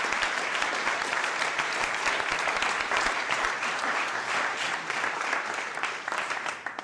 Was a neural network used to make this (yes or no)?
yes